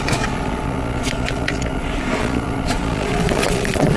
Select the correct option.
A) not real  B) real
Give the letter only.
A